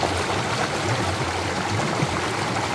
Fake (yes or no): no